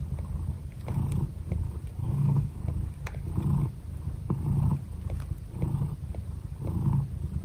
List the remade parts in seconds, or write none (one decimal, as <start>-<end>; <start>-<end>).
2.0-2.6